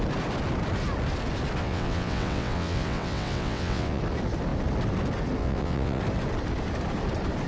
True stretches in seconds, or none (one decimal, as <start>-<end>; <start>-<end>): 0.0-1.6; 4.0-5.4; 6.0-7.5